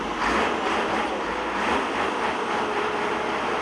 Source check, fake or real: real